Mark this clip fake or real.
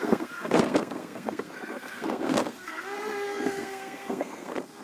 fake